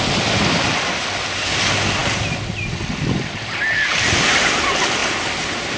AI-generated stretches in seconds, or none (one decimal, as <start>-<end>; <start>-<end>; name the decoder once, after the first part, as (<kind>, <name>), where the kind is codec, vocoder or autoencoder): none